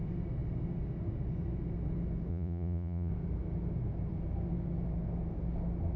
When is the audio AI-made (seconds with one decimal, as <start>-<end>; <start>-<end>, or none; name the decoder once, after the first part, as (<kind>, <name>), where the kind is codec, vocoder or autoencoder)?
2.3-3.1 (vocoder, Vocos)